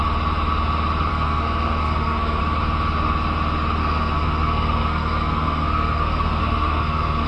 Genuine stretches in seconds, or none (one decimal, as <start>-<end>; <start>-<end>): 0.0-1.1; 2.4-3.8